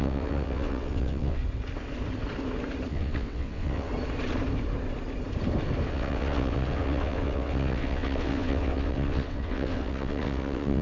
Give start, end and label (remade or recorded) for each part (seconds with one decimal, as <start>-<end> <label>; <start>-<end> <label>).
0.0-1.4 remade; 1.4-2.9 recorded; 2.9-3.9 remade; 3.9-5.9 recorded; 5.9-10.8 remade